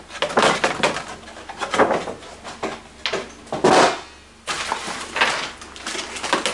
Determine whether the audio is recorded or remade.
recorded